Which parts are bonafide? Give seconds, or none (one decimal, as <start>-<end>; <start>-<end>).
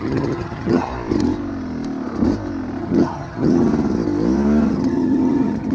0.9-2.8; 3.7-4.7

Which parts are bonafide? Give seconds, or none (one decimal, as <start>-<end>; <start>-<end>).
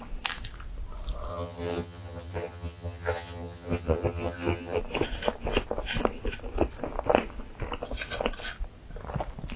0.0-1.3; 4.8-9.6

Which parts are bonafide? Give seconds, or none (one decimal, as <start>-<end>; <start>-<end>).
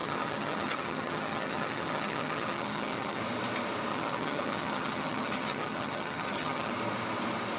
3.2-3.9; 6.7-7.6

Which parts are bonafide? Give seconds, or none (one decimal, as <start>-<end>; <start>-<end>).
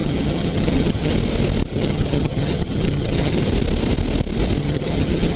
1.1-1.7; 3.4-4.6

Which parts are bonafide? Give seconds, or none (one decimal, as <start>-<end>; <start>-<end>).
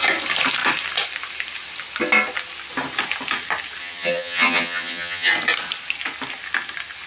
0.0-3.8; 5.3-7.1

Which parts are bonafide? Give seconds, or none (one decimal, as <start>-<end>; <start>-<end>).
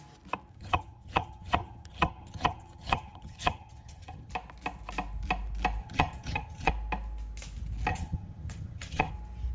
0.0-0.5; 4.3-5.8; 6.7-7.9; 9.1-9.5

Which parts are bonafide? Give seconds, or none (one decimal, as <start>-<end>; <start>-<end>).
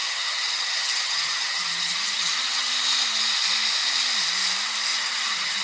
2.7-4.9